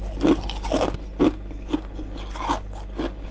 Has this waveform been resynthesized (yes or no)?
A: no